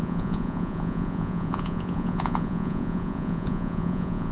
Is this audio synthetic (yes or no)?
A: yes